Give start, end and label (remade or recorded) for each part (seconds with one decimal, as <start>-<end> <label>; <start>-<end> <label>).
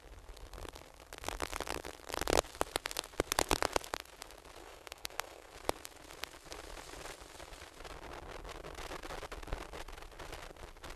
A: 0.0-4.6 recorded; 4.6-5.5 remade; 5.5-11.0 recorded